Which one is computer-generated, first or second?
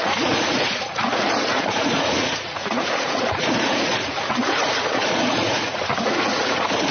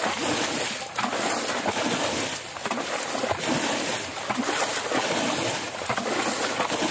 first